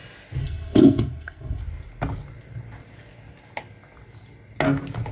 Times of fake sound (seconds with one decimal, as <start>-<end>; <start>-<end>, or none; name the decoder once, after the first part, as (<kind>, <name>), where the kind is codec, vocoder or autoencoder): 0.4-1.6 (codec, SNAC)